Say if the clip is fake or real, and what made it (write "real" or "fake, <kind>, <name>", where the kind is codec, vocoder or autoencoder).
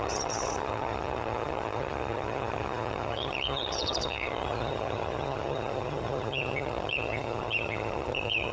fake, vocoder, HiFi-GAN